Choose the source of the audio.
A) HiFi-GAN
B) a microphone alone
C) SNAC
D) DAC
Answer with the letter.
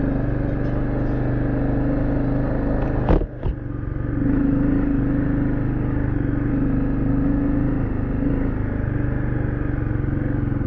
B